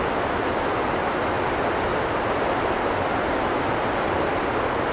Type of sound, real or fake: real